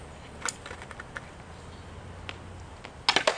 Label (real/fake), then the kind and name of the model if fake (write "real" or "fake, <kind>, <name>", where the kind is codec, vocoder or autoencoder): real